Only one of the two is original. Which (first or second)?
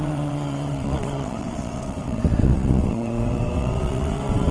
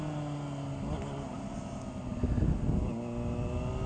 second